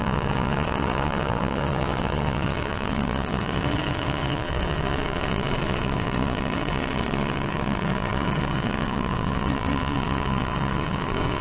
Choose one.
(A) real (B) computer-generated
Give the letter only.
B